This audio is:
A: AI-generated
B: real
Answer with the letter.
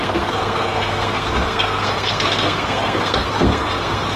A